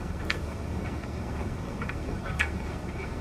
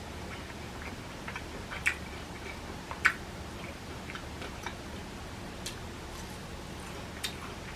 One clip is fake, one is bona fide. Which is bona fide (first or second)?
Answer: second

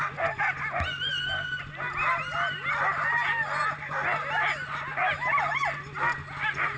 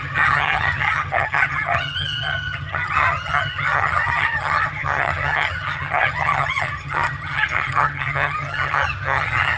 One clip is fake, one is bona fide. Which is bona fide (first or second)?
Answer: first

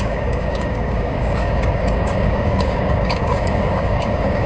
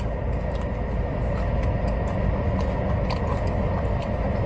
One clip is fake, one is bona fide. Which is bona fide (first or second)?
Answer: second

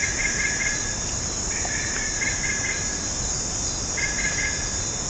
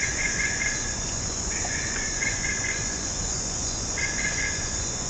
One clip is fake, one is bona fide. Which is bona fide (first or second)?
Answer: first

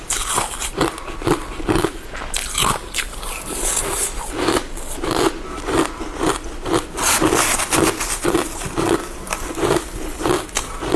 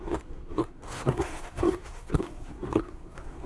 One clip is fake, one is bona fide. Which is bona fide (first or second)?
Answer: first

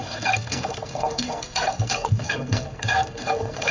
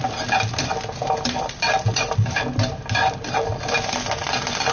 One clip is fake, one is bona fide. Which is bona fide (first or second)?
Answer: second